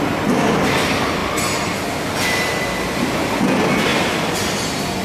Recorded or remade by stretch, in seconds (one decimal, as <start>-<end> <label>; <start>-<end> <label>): 0.0-3.9 recorded; 3.9-5.0 remade